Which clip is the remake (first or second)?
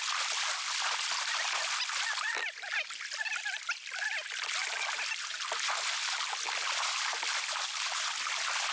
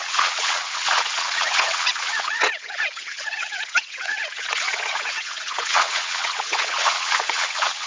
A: second